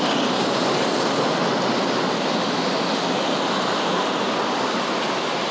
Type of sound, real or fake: real